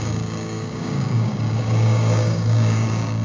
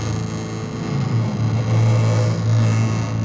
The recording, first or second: second